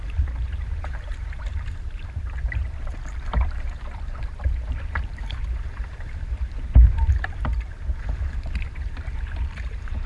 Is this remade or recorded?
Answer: remade